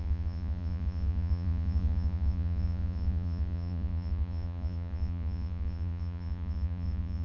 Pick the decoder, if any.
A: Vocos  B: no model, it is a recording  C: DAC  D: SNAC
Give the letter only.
A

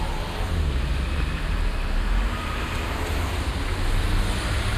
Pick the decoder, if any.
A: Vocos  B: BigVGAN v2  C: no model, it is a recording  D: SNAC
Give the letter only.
C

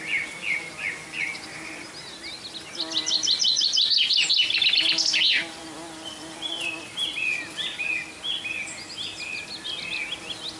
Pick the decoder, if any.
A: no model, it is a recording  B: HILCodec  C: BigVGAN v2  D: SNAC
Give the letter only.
A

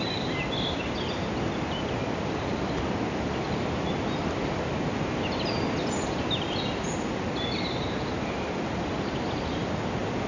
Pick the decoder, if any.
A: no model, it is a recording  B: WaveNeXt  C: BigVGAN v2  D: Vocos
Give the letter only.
A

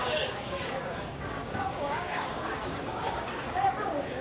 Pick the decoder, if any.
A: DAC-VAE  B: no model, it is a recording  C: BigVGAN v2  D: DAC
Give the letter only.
D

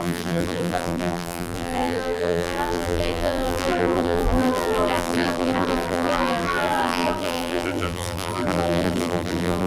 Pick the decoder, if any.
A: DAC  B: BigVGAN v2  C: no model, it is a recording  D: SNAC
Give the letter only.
B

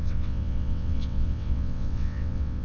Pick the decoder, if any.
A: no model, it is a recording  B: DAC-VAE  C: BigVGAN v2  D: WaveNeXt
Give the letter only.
D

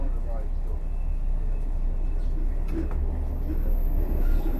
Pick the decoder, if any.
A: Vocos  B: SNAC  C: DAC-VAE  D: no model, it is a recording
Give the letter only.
D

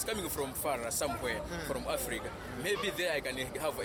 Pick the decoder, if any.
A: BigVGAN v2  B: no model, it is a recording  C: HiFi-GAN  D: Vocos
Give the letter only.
A